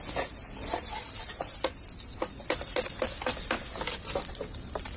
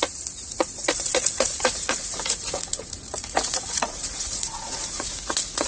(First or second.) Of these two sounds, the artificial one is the second